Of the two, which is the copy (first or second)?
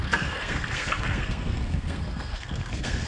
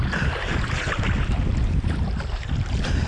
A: first